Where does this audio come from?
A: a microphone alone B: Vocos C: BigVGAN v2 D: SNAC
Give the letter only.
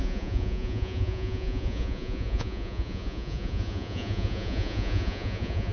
B